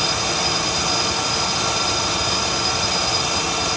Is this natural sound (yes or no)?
yes